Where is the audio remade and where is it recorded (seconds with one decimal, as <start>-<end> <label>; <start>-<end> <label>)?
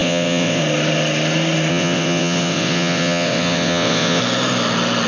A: 0.0-0.6 remade; 0.6-1.7 recorded; 1.7-4.2 remade; 4.2-5.1 recorded